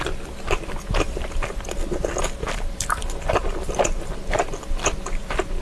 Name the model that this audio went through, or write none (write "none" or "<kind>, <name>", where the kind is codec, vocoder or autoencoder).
none